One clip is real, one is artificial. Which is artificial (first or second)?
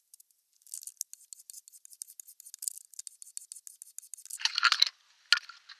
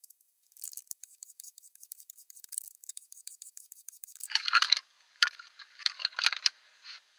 second